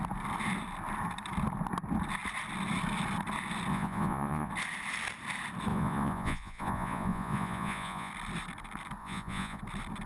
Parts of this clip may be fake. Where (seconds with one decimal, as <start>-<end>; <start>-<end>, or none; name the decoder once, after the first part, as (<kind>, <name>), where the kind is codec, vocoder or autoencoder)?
3.7-4.5 (vocoder, Vocos); 5.7-8.1; 9.0-9.6